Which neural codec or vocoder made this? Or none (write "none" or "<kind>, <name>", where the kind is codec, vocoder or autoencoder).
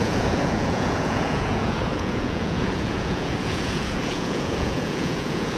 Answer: vocoder, Vocos